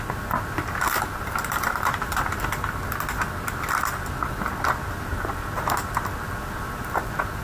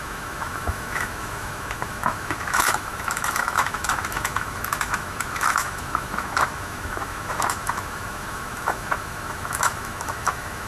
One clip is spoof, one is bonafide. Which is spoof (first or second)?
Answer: second